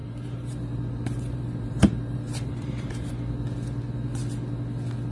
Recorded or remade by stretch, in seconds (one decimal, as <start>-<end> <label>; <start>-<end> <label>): 0.0-3.1 remade; 3.1-5.1 recorded